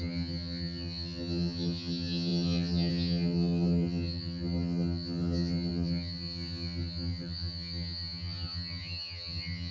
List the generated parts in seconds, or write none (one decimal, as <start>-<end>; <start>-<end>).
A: 0.0-9.7